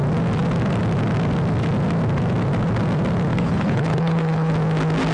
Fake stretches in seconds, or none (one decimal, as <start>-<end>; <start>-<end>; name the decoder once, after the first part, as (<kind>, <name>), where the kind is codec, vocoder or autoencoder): 3.3-4.5 (codec, HILCodec)